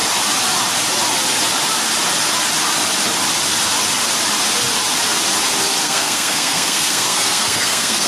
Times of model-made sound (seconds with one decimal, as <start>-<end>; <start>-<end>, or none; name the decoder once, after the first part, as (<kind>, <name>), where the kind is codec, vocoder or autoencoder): 5.8-8.1 (codec, SNAC)